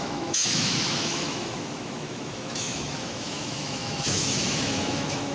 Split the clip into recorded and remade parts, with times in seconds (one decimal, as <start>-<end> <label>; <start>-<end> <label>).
0.0-5.3 remade